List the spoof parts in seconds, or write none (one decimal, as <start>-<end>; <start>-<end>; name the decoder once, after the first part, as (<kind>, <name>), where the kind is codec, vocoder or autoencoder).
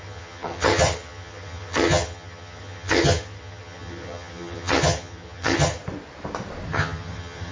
0.0-5.8 (vocoder, HiFi-GAN); 6.7-7.5